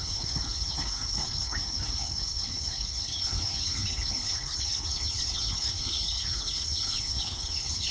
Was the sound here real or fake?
fake